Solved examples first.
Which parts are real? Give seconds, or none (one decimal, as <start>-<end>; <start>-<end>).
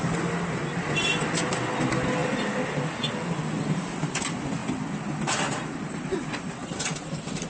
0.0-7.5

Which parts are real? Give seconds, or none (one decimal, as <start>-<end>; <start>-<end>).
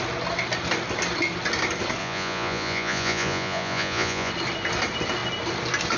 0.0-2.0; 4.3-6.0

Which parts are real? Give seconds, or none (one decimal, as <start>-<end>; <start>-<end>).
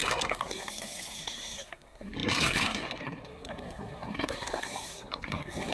none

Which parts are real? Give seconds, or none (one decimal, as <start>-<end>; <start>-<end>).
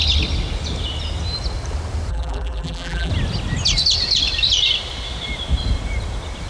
0.0-2.1; 3.1-6.5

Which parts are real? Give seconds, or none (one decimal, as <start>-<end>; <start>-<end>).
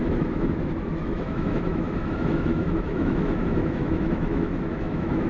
none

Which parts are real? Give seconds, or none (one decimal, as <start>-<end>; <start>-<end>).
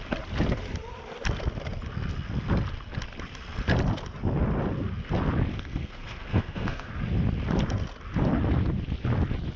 0.0-5.5; 6.9-9.6